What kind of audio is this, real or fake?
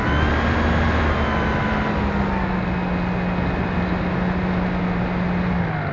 real